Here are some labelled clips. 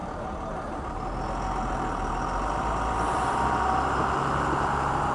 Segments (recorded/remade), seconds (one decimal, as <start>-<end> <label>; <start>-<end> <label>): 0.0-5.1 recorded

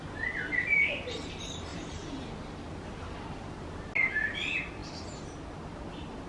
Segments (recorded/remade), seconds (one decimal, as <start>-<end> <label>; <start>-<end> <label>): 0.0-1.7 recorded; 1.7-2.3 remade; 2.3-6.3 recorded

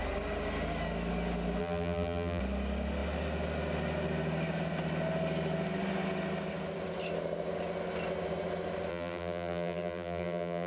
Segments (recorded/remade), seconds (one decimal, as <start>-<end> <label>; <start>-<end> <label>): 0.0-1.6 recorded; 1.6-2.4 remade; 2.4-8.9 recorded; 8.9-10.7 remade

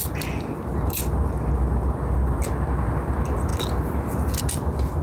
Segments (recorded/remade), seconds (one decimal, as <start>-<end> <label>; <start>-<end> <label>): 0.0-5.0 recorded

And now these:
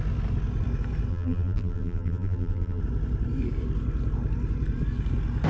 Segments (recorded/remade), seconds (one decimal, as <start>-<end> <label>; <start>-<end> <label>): 0.0-1.1 recorded; 1.1-2.8 remade; 2.8-5.5 recorded

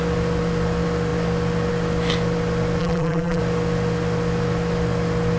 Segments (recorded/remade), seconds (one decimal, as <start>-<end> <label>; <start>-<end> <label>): 0.0-2.8 recorded; 2.8-3.4 remade; 3.4-5.4 recorded